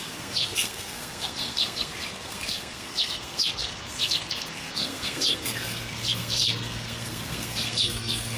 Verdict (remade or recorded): remade